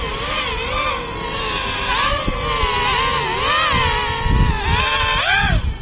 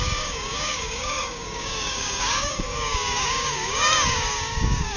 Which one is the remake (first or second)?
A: second